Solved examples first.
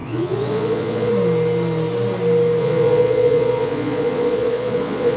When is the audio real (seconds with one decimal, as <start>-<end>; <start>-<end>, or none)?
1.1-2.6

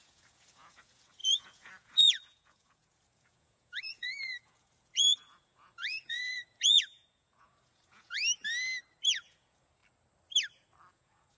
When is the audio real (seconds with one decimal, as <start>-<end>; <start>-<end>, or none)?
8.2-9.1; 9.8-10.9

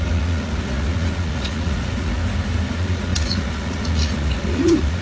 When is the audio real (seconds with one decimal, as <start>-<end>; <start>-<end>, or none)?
2.2-2.7

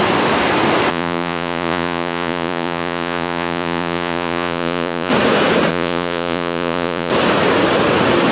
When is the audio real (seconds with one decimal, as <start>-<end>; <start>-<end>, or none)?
0.0-0.9; 5.1-5.7; 7.1-8.3

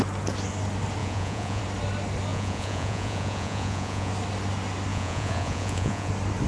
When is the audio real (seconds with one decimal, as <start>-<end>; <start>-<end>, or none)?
0.0-1.0; 1.6-2.3; 4.1-4.9; 6.1-6.5

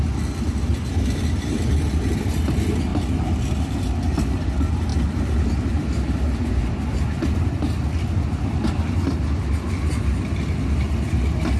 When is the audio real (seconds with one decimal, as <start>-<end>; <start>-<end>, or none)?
0.0-11.6

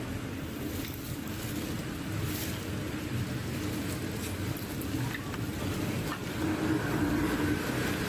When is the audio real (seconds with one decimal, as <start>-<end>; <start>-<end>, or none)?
0.0-8.1

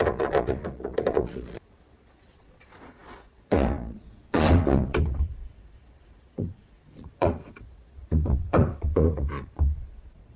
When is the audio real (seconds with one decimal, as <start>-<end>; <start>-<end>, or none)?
none